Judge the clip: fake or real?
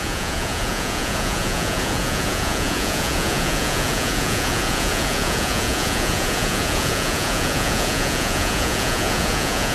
fake